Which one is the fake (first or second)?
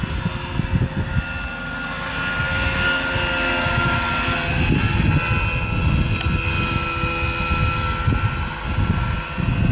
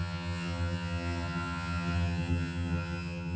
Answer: second